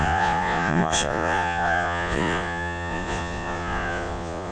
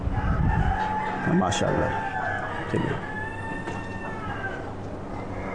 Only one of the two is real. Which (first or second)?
second